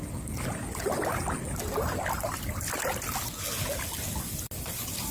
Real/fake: real